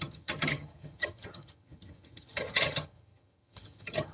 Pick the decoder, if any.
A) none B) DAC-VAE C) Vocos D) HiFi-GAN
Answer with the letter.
D